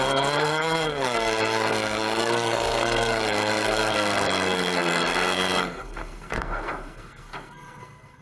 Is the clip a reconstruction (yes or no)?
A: yes